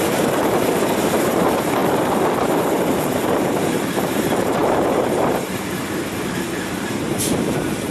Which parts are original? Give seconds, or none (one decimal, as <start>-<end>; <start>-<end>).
1.8-2.6